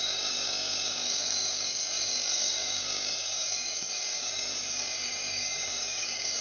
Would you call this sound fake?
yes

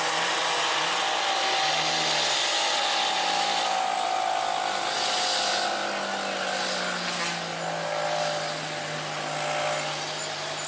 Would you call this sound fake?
no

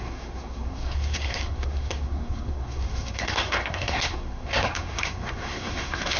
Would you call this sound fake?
yes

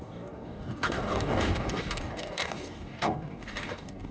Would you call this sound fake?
yes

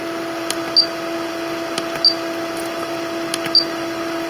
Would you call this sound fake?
no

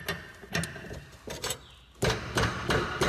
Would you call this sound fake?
no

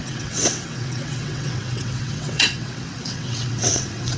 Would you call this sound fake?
yes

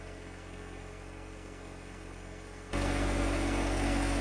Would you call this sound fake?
yes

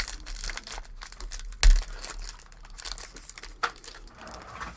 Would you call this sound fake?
no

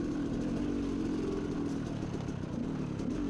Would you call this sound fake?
no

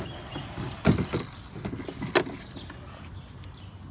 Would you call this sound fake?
no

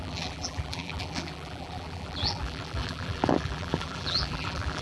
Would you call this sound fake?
yes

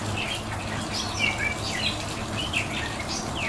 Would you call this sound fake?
no